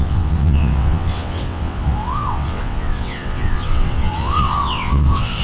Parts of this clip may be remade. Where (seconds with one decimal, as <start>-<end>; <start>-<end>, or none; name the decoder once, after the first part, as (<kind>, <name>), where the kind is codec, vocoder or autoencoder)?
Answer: 0.0-5.4 (vocoder, WaveNeXt)